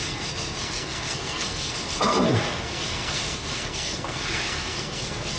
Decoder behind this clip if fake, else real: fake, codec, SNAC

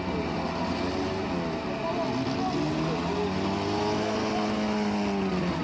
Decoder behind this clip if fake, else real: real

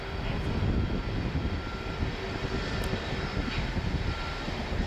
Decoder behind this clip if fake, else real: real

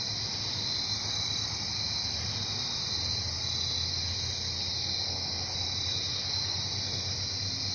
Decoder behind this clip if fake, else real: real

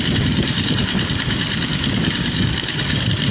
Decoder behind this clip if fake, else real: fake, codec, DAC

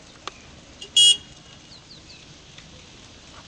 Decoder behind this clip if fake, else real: real